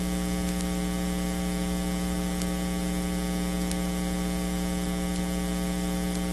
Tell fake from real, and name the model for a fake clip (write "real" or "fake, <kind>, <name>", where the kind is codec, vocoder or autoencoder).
real